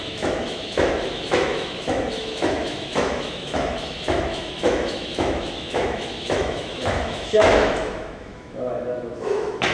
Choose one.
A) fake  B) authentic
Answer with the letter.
A